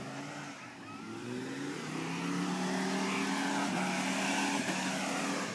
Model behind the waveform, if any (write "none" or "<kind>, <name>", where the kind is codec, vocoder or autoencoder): none